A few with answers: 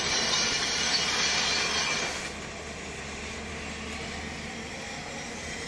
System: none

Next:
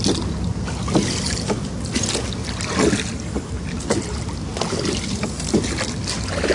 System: none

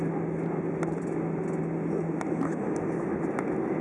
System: none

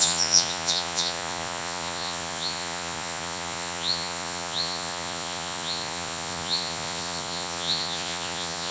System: vocoder, Vocos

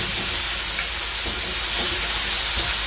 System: none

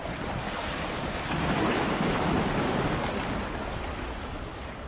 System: none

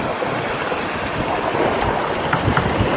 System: none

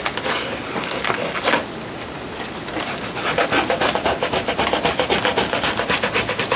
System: none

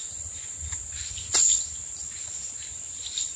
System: none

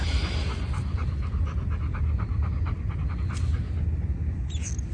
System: none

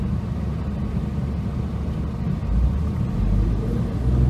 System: none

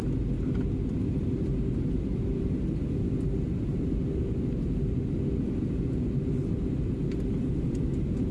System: none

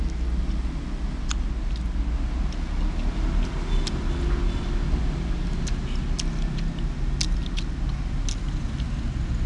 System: none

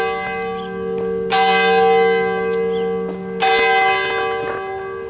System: none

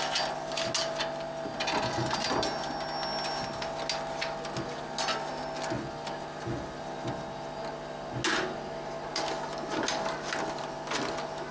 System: none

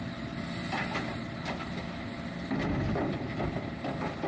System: vocoder, BigVGAN v2